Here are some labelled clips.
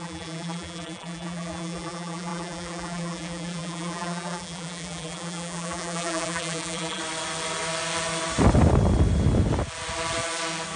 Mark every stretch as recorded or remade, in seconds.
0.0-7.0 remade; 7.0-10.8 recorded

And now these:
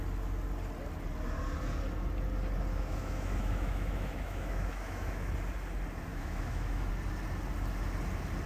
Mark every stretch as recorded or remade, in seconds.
0.0-2.7 recorded; 2.7-5.3 remade; 5.3-6.1 recorded; 6.1-6.9 remade; 6.9-8.5 recorded

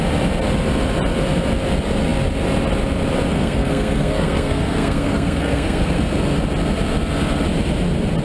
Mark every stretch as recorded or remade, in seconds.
0.0-3.3 recorded; 3.3-6.0 remade; 6.0-8.2 recorded

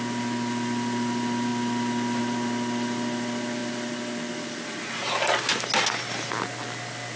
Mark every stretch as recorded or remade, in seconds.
0.0-7.2 recorded

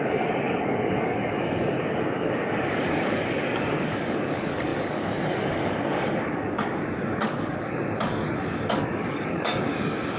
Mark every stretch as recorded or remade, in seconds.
0.0-10.2 remade